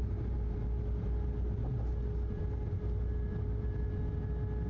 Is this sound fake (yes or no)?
no